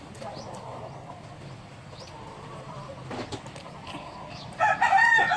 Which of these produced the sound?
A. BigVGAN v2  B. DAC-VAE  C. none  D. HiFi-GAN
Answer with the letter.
C